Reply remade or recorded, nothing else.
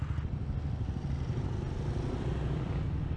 recorded